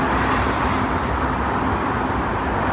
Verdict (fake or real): real